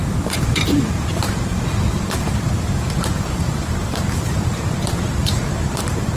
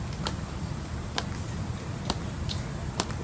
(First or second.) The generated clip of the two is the first